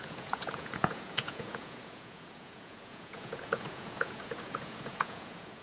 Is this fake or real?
fake